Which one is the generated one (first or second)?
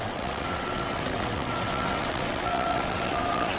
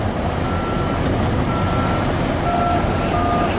first